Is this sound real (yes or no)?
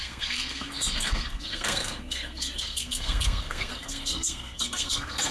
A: no